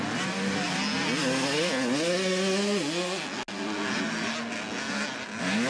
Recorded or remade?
recorded